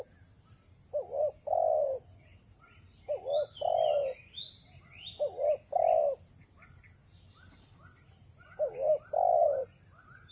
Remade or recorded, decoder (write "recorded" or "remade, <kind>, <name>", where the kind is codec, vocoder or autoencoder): recorded